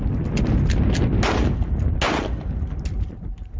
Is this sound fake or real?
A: real